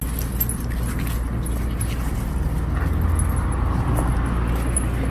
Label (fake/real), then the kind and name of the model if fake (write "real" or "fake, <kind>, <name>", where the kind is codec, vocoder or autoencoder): real